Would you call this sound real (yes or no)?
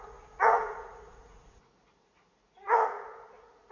no